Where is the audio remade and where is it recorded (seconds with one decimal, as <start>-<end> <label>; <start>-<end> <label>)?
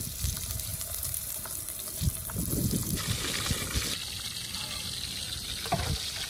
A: 0.0-0.7 recorded; 0.7-1.4 remade; 1.4-6.3 recorded